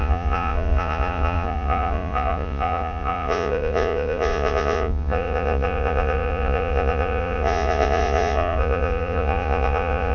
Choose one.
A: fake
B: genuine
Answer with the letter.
A